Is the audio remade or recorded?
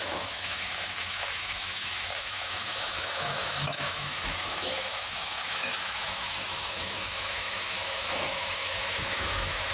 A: remade